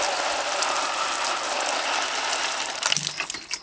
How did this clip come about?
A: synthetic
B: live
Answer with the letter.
B